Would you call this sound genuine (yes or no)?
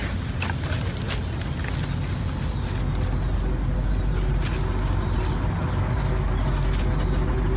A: yes